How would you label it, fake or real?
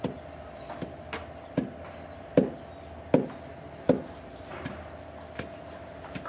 real